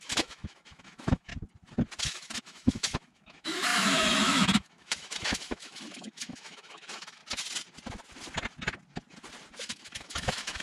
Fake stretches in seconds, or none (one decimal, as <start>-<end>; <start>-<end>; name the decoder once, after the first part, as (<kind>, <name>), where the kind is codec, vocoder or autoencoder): 0.0-1.3 (autoencoder, DAC-VAE); 2.0-7.2; 9.6-10.6